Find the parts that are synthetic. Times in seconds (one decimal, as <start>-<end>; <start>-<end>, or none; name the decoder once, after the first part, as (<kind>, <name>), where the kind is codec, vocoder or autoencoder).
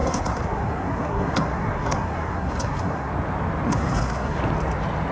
0.0-3.1 (codec, SNAC); 3.7-4.4